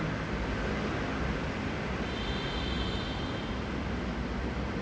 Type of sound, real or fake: real